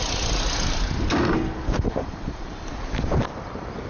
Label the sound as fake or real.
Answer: real